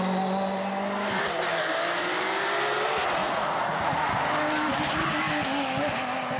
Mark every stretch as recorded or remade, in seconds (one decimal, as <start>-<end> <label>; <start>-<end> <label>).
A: 0.0-3.2 recorded; 3.2-4.2 remade; 4.2-6.4 recorded

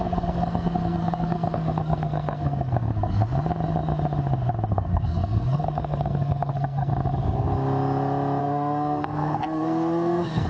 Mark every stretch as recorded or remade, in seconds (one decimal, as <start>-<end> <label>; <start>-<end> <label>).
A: 0.0-3.2 remade; 3.2-4.7 recorded; 4.7-6.9 remade; 6.9-8.4 recorded; 8.4-10.5 remade

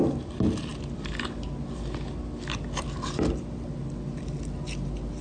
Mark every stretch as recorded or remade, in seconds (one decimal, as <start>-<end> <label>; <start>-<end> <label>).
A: 0.0-5.2 recorded

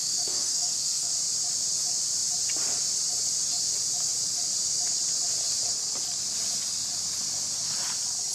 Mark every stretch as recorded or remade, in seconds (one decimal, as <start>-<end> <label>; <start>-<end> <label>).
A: 0.0-1.1 remade; 1.1-8.3 recorded

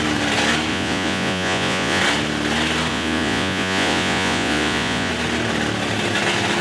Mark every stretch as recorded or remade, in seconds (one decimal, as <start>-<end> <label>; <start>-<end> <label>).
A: 0.0-0.7 recorded; 0.7-2.0 remade; 2.0-2.9 recorded; 2.9-5.1 remade; 5.1-6.6 recorded

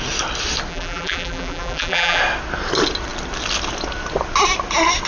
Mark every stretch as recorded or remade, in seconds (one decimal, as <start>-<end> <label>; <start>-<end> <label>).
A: 0.0-0.7 recorded; 0.7-2.2 remade; 2.2-5.1 recorded

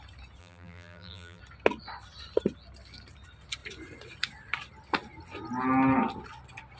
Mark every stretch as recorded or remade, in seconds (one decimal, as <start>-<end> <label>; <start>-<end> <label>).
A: 0.0-0.4 recorded; 0.4-1.4 remade; 1.4-6.8 recorded